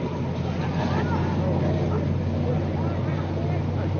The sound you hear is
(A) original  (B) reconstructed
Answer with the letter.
A